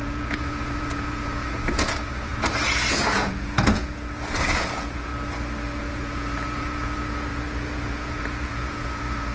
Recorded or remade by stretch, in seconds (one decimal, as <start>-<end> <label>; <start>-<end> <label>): 0.0-2.3 remade; 2.3-2.9 recorded; 2.9-5.1 remade; 5.1-5.9 recorded; 5.9-9.3 remade